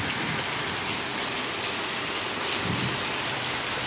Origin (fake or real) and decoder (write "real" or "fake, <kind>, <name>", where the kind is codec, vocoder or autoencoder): real